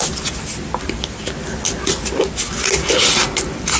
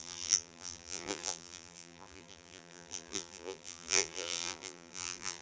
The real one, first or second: first